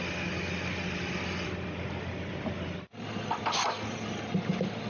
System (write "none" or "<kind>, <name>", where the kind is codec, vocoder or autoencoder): none